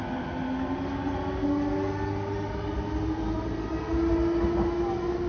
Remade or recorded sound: recorded